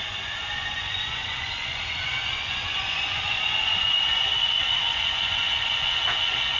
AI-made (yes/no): yes